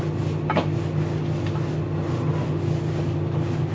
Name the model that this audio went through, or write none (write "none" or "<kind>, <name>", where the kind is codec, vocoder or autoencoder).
none